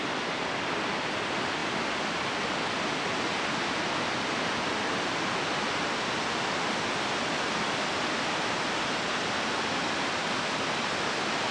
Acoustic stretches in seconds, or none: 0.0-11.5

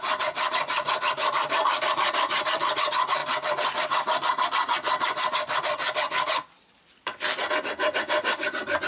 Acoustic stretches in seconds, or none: none

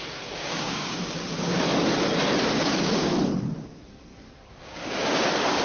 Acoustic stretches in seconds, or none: 1.7-2.5; 3.1-4.5